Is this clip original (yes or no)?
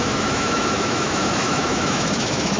no